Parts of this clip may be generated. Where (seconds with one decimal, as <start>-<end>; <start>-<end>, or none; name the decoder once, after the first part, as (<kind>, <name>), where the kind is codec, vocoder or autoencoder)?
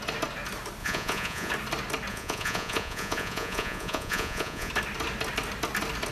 0.8-1.5 (vocoder, Vocos); 2.1-4.7